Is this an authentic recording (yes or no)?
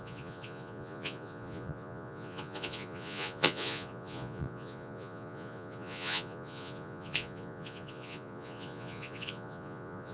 no